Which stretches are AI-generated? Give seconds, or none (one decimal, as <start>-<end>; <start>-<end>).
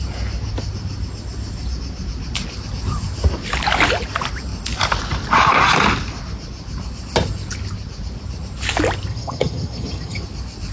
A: 9.1-10.2